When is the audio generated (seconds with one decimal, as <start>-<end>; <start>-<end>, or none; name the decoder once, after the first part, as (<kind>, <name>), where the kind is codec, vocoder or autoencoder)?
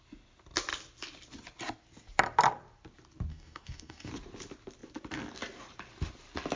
3.3-4.1 (codec, DAC)